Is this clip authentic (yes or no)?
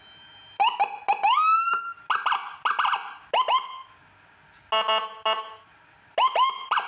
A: yes